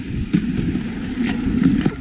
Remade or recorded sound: recorded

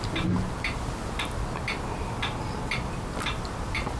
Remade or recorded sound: recorded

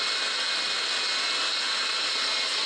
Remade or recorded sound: recorded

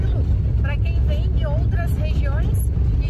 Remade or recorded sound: recorded